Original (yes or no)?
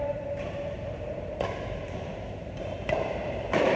no